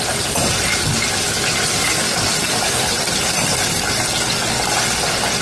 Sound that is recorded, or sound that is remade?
recorded